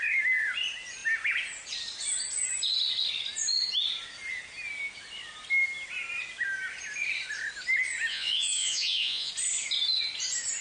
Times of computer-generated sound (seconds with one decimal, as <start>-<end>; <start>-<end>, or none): 8.1-9.3

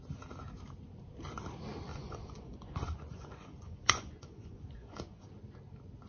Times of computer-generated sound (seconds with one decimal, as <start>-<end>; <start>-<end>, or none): 1.9-5.3

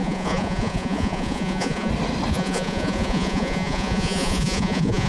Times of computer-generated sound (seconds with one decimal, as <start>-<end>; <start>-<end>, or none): 0.0-1.9; 2.3-5.1

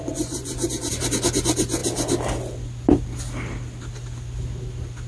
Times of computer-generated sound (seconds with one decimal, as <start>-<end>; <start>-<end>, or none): 0.0-0.9

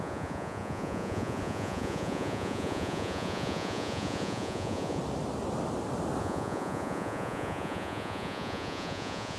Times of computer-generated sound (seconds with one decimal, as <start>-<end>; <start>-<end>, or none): 0.0-5.0; 6.2-9.4

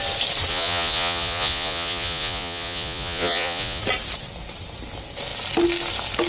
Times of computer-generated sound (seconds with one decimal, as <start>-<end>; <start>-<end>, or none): 0.5-3.8

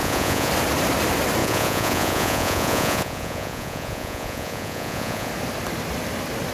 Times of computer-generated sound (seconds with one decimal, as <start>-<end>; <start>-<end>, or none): 0.0-0.5; 1.4-5.3